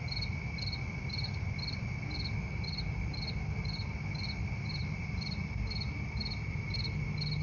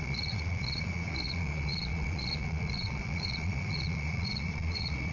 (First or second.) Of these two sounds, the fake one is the second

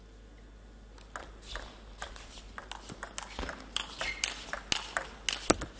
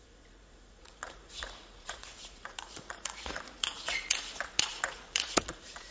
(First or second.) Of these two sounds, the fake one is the second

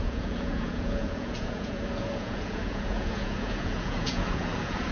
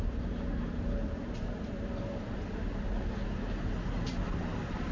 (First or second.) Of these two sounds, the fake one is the first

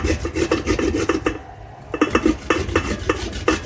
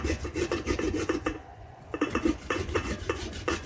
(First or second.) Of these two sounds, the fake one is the second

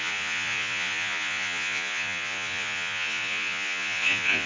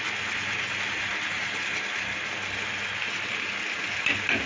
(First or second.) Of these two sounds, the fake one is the first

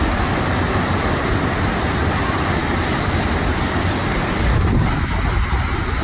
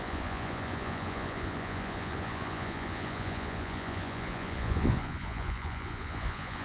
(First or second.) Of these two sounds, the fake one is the second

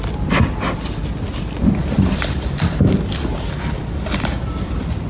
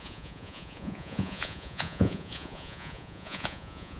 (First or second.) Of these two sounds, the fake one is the second